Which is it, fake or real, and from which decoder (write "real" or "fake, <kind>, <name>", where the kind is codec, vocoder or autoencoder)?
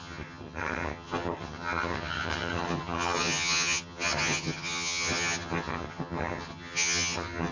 fake, vocoder, HiFi-GAN